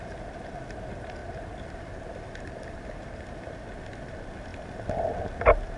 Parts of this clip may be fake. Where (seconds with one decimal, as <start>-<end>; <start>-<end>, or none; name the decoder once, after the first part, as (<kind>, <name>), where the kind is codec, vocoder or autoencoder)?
none